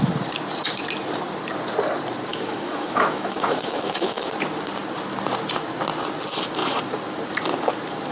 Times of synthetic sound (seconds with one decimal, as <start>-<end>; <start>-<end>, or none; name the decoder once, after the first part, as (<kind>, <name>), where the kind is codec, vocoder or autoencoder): 2.3-4.3 (autoencoder, DAC-VAE)